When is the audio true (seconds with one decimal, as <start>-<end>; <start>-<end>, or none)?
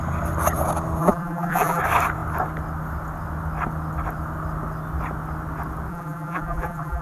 0.0-1.0; 1.8-5.9